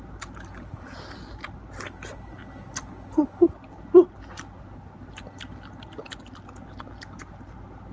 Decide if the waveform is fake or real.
real